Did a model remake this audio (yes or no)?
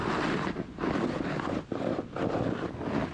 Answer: no